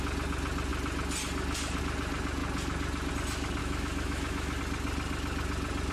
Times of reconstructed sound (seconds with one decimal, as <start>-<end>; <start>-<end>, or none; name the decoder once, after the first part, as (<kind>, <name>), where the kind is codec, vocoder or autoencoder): 3.6-4.6 (autoencoder, DAC-VAE)